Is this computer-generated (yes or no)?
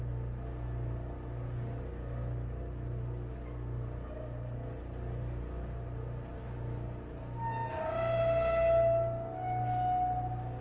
no